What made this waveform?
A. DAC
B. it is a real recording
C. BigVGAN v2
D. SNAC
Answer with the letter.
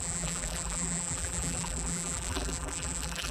C